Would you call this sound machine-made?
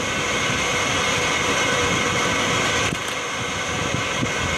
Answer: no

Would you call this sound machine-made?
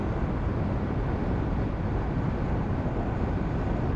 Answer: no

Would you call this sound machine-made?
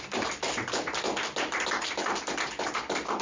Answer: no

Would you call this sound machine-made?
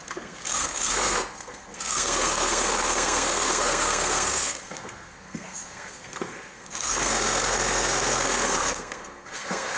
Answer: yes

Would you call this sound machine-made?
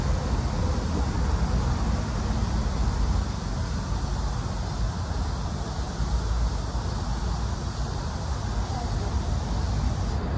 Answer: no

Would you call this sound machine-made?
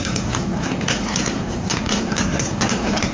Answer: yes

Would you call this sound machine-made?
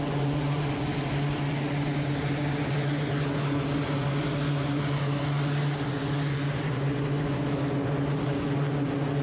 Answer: no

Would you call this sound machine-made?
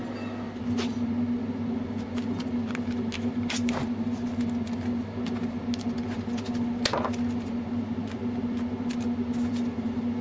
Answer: no